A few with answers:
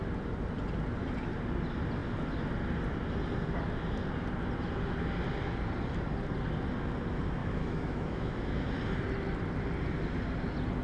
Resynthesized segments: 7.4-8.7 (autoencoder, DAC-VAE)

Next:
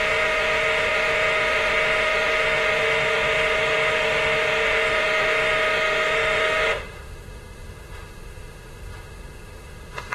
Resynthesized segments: 0.0-10.1 (autoencoder, DAC-VAE)

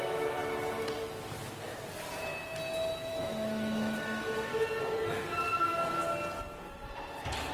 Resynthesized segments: 0.0-0.4 (autoencoder, DAC-VAE); 3.1-4.5

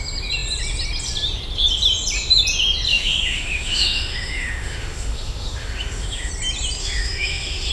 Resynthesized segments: 2.9-6.3 (autoencoder, DAC-VAE); 6.8-7.7

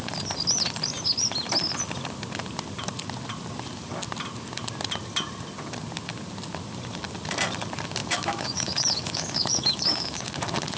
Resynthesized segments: 8.0-10.2 (autoencoder, DAC-VAE)

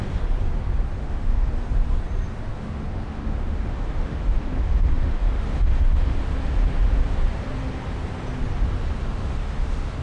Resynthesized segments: 1.0-1.5 (autoencoder, DAC-VAE); 2.5-6.3; 9.0-10.0

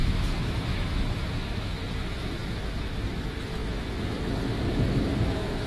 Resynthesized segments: 0.0-5.7 (autoencoder, DAC-VAE)